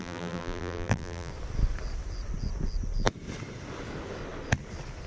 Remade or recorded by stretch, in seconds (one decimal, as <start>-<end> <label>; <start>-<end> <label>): 0.0-1.3 remade; 1.3-5.1 recorded